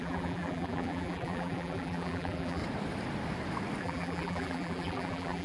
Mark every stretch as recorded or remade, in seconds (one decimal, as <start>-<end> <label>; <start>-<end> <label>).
0.0-2.6 remade; 2.6-3.8 recorded; 3.8-5.4 remade